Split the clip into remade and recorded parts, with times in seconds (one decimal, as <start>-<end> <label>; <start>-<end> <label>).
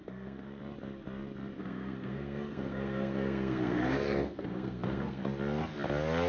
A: 0.0-0.6 remade; 0.6-1.6 recorded; 1.6-5.2 remade; 5.2-6.3 recorded